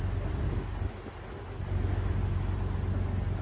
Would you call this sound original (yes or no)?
yes